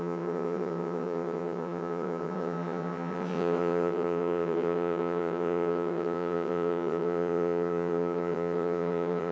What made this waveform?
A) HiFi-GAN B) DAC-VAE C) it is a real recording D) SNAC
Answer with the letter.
A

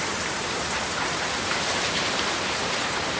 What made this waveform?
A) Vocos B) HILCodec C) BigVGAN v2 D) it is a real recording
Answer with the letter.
C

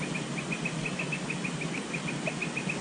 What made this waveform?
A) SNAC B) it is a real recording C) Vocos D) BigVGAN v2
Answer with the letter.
B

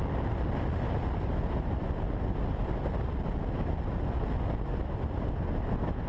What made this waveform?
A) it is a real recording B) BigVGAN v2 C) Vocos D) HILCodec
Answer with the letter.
A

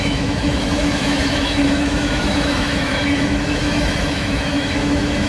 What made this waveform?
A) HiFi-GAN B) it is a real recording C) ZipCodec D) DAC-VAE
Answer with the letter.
D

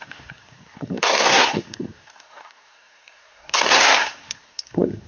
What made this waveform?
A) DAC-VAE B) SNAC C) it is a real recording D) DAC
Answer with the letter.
B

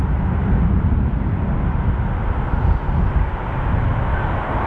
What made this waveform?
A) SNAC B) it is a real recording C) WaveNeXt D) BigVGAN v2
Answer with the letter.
B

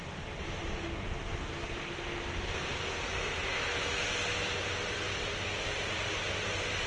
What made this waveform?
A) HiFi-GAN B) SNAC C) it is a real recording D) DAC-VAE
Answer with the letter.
C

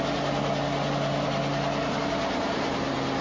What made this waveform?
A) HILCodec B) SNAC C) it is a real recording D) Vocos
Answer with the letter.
C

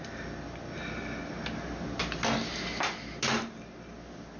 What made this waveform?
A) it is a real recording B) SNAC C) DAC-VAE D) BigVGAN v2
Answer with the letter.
A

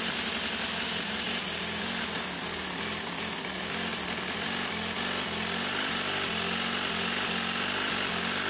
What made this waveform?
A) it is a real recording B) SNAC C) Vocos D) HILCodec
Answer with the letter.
A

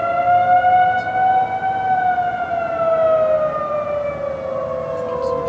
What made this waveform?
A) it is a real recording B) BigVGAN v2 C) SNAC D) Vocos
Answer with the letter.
A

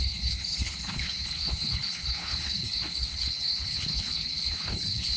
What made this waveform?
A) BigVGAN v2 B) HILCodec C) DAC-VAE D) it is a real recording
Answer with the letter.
B